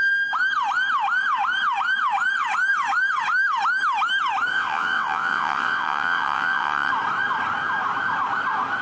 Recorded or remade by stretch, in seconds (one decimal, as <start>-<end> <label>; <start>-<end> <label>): 0.0-4.5 recorded; 4.5-6.9 remade; 6.9-8.8 recorded